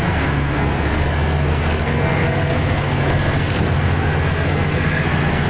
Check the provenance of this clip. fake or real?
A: fake